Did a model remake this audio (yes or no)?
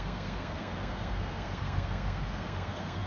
yes